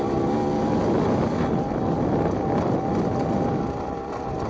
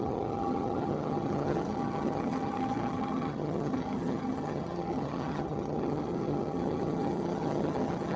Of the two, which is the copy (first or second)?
second